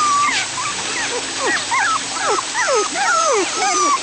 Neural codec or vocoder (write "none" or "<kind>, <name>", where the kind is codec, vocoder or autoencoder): none